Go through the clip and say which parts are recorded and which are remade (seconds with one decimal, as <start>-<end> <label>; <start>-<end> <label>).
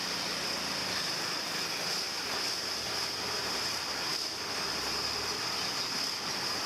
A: 0.0-6.7 recorded